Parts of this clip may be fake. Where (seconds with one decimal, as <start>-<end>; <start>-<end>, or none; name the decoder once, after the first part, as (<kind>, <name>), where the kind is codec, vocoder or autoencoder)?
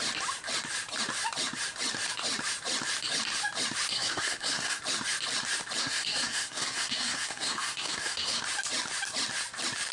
3.9-4.8 (codec, SNAC); 5.8-8.4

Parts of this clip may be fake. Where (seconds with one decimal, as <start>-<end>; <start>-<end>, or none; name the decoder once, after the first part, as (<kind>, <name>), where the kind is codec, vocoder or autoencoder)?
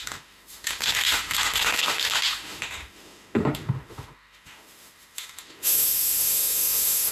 0.0-7.1 (autoencoder, DAC-VAE)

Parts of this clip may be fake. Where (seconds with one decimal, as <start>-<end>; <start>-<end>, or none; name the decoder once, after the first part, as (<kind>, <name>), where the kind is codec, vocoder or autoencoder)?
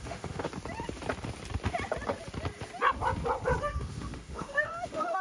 0.0-0.5 (autoencoder, DAC-VAE); 3.6-5.2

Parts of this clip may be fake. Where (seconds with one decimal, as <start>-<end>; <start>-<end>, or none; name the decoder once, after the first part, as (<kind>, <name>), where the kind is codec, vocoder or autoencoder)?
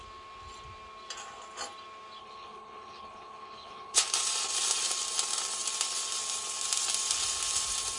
2.2-4.0 (codec, HILCodec)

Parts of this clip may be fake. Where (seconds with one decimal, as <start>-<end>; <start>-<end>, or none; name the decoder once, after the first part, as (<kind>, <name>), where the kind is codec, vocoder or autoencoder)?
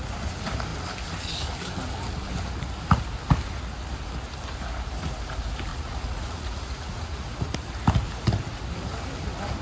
5.7-7.5 (vocoder, Vocos)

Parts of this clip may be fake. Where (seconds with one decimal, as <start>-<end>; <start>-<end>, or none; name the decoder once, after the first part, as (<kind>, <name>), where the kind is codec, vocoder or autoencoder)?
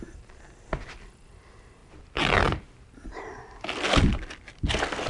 none